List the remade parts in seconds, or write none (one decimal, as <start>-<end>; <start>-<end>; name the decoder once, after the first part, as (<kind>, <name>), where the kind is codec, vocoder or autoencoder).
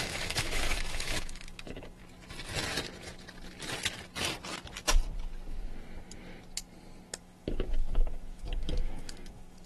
0.0-2.0 (autoencoder, DAC-VAE); 7.2-9.7